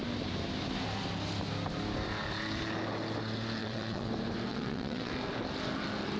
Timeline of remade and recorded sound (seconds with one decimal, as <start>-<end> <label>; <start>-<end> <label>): 0.0-3.6 recorded; 3.6-4.1 remade; 4.1-4.5 recorded; 4.5-5.1 remade; 5.1-6.2 recorded